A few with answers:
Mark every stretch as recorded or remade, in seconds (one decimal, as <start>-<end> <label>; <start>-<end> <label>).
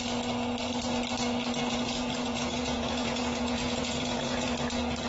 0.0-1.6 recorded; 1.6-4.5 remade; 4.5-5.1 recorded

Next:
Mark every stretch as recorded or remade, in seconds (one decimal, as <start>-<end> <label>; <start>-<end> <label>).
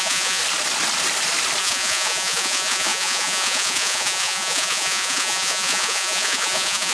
0.0-0.4 remade; 0.4-1.6 recorded; 1.6-6.9 remade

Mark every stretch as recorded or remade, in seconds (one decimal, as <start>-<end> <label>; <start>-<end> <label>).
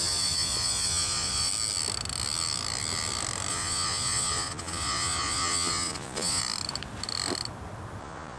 0.0-1.5 remade; 1.5-3.5 recorded; 3.5-6.4 remade; 6.4-8.0 recorded; 8.0-8.4 remade